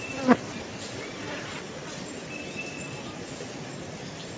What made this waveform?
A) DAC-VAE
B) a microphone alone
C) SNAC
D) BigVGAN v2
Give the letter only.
B